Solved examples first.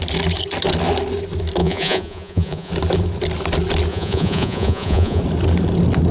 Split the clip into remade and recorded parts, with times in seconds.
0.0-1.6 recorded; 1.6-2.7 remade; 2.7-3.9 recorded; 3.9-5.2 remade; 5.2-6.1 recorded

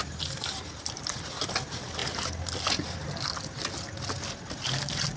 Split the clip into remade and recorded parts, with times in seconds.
0.0-5.2 recorded

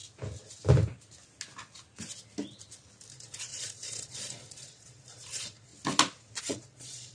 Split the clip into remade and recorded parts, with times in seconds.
0.0-3.1 recorded; 3.1-5.7 remade; 5.7-6.4 recorded; 6.4-7.1 remade